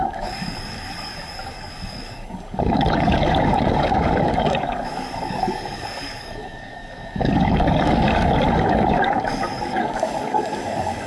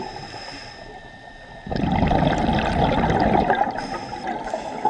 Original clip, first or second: second